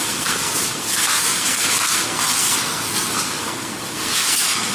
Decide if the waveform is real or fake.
fake